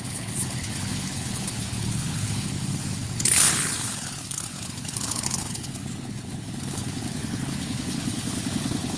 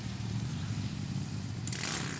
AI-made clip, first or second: first